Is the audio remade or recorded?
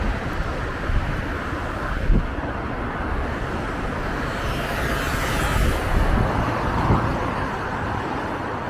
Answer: recorded